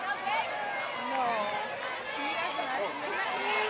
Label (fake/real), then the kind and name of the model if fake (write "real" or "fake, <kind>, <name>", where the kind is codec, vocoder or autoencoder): real